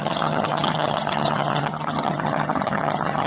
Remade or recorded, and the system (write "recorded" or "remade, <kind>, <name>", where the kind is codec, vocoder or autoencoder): remade, vocoder, HiFi-GAN